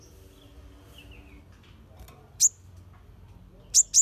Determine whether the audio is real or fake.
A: real